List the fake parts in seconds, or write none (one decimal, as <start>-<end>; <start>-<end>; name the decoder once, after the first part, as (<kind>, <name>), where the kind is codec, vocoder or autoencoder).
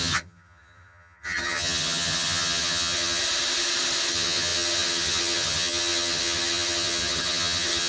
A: 0.0-3.2 (vocoder, HiFi-GAN); 4.1-7.9